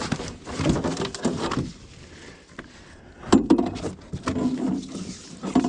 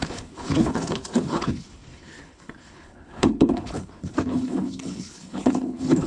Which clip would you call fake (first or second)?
second